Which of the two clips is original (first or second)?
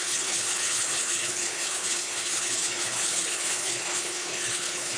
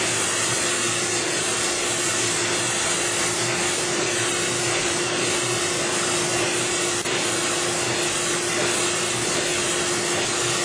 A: second